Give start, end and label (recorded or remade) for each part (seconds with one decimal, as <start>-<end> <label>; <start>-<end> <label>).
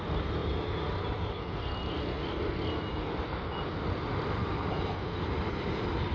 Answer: 0.0-6.1 recorded